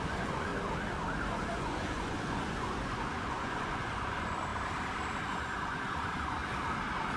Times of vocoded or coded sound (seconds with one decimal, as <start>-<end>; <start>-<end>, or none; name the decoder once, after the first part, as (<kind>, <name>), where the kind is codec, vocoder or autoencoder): 0.0-0.5 (vocoder, Vocos); 1.2-4.5; 5.2-6.4

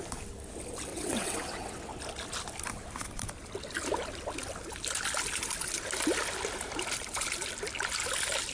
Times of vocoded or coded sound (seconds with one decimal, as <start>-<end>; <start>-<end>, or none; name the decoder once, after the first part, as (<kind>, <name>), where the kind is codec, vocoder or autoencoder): 0.9-1.8 (vocoder, WaveNeXt)

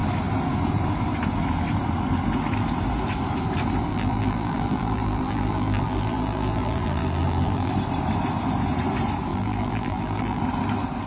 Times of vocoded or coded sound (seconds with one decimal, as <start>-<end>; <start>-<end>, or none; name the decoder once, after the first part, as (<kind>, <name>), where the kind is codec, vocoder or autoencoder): 3.9-7.7 (vocoder, BigVGAN v2); 9.3-10.4

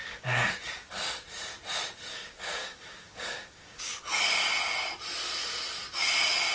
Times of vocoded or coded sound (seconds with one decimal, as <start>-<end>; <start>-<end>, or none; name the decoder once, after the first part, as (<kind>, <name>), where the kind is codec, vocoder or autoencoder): 0.0-0.5 (codec, DAC); 2.1-4.0

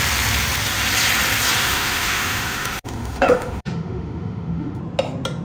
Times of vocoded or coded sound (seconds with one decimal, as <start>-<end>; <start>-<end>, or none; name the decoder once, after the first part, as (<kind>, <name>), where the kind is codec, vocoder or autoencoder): 1.6-4.8 (autoencoder, DAC-VAE)